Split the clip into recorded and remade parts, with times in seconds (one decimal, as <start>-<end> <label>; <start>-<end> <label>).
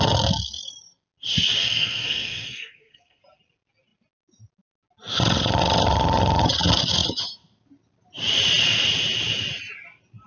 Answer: 0.0-1.6 recorded; 1.6-3.2 remade; 3.2-10.3 recorded